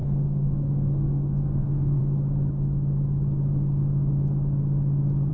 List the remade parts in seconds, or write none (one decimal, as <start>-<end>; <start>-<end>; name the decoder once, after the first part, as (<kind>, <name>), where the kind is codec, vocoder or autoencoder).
0.0-2.0 (codec, SNAC)